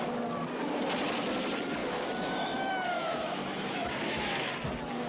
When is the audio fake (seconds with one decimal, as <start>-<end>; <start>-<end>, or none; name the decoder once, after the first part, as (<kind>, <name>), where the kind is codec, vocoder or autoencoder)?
1.8-4.5 (autoencoder, DAC-VAE)